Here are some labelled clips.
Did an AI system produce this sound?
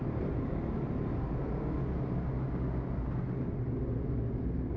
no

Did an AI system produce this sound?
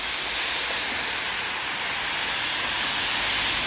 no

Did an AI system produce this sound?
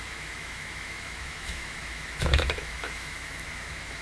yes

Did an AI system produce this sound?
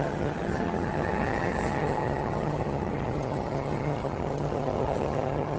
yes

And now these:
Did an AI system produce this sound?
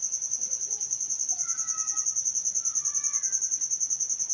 no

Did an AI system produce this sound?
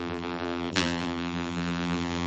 yes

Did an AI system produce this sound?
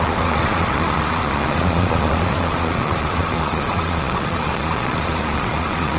yes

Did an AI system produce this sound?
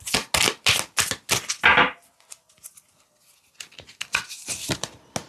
no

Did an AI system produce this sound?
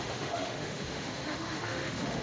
yes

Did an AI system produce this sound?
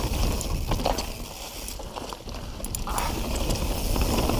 no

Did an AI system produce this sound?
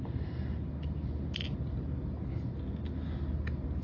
no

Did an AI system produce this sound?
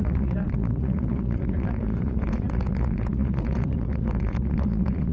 yes